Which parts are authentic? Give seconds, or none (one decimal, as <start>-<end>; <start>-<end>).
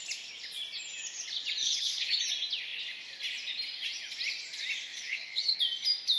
0.0-1.6; 2.2-4.9; 5.6-6.2